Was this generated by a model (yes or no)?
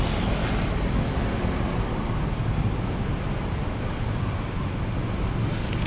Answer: no